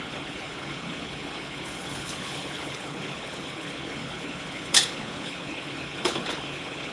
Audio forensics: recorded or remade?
remade